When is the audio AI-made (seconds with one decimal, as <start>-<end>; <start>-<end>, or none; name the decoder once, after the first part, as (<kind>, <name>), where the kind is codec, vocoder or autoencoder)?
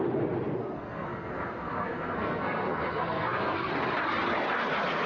0.6-3.7 (codec, SNAC)